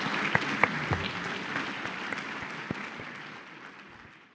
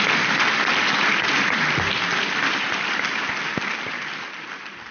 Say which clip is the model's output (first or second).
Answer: second